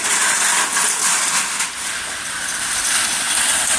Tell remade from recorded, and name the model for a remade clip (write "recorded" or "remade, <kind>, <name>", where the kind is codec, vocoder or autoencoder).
recorded